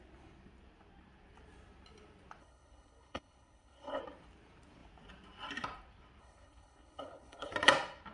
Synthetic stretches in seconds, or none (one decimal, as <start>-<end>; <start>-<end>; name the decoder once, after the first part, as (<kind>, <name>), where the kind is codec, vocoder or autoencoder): 2.4-4.0 (codec, HILCodec); 6.2-7.5